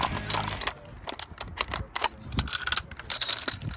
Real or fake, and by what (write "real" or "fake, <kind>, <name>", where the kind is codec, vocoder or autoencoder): real